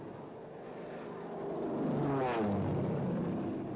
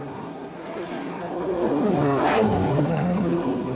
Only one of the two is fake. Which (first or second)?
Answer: second